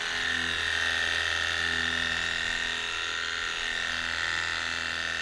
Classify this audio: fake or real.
real